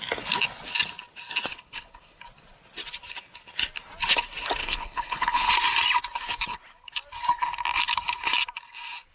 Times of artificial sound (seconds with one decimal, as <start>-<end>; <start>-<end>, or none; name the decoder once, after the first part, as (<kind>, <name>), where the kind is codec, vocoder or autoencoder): 1.5-2.2 (codec, HILCodec); 4.6-5.5